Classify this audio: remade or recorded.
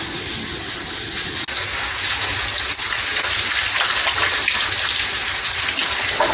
recorded